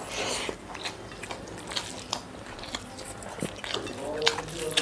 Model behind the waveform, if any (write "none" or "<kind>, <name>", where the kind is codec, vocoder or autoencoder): none